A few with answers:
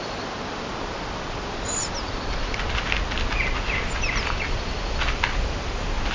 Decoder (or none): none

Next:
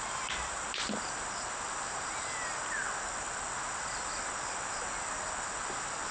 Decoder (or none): none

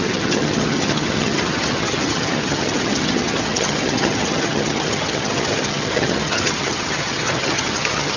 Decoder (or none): vocoder, HiFi-GAN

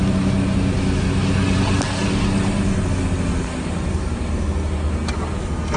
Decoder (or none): none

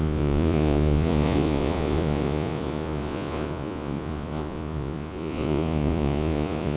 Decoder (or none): vocoder, Vocos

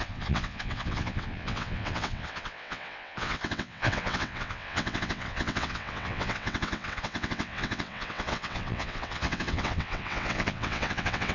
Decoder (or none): vocoder, WaveNeXt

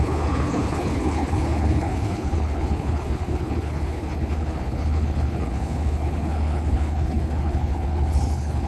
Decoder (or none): codec, HILCodec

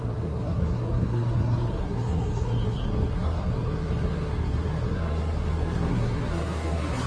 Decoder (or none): codec, SNAC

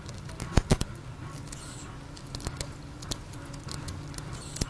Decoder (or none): none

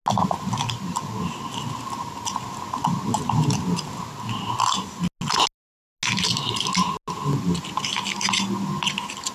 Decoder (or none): none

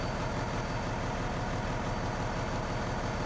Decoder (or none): none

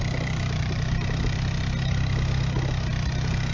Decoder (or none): none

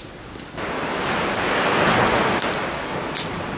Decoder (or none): none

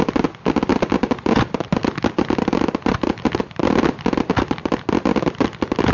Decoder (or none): none